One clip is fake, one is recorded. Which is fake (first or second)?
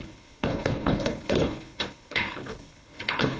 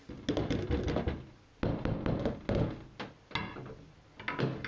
first